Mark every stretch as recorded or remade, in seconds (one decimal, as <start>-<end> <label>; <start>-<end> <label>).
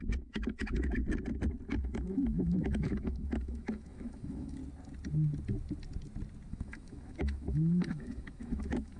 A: 0.0-1.0 remade; 1.0-1.7 recorded; 1.7-4.6 remade; 4.6-6.5 recorded; 6.5-9.0 remade